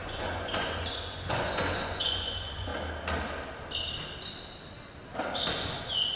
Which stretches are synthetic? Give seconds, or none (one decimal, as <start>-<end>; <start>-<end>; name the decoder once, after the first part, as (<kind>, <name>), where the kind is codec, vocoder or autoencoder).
0.0-2.7 (vocoder, Vocos); 5.5-6.2